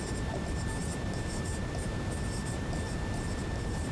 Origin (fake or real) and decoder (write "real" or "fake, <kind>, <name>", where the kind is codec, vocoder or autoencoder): fake, vocoder, BigVGAN v2